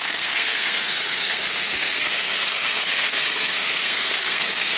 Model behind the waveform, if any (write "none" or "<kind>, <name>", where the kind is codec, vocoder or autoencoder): codec, SNAC